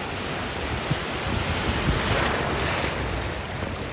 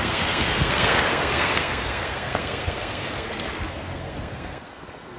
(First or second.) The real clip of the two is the first